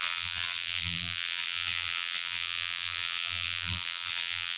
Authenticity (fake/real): fake